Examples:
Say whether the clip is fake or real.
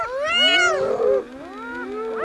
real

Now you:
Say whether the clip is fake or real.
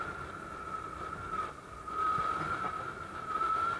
real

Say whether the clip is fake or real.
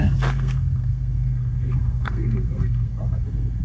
fake